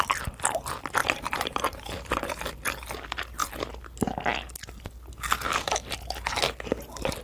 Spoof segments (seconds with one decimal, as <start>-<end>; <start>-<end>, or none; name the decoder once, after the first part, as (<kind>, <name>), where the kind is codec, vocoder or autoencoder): 1.0-2.4 (vocoder, BigVGAN v2)